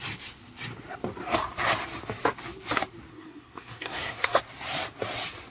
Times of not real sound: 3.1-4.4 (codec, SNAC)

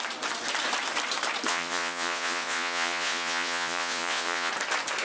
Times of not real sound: 1.5-4.5 (vocoder, Vocos)